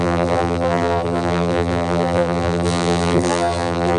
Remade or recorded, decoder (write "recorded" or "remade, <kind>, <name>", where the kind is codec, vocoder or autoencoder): remade, vocoder, BigVGAN v2